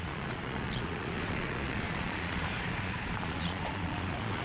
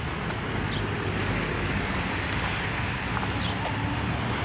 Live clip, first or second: second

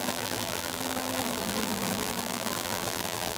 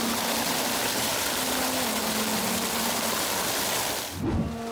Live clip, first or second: second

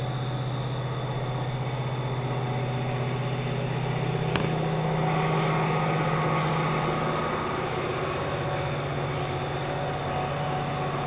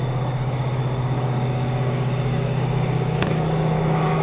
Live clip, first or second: first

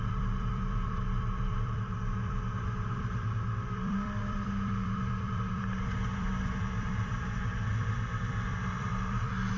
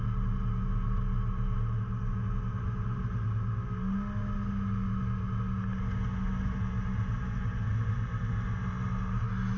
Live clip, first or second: second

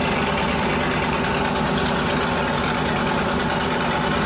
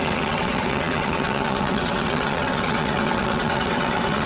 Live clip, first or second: first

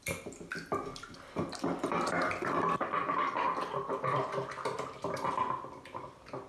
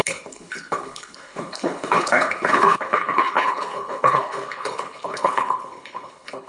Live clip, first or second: first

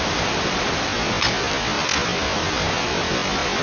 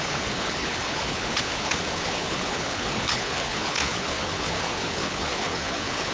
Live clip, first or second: first